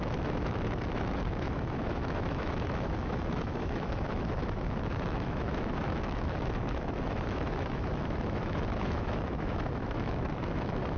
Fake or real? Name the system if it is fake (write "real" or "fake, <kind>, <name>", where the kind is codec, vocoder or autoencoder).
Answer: fake, autoencoder, DAC-VAE